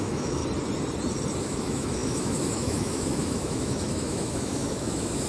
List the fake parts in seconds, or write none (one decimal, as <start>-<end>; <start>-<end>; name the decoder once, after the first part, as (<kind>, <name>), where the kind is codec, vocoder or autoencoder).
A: 0.0-0.4 (autoencoder, DAC-VAE); 1.4-5.3